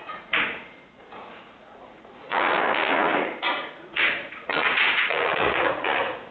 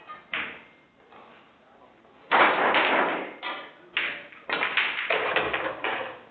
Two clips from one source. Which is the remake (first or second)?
first